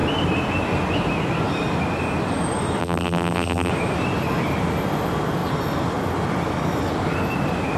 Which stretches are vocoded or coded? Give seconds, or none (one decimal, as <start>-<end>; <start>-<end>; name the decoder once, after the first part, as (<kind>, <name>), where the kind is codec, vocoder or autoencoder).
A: 2.8-3.7 (vocoder, BigVGAN v2)